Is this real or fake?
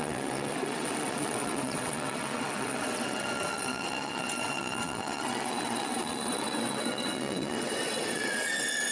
fake